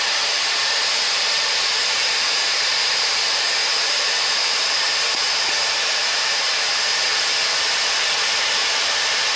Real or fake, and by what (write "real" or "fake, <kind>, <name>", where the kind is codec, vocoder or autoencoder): fake, vocoder, BigVGAN v2